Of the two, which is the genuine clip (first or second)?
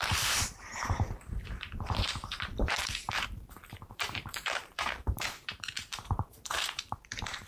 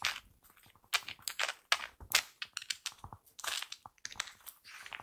second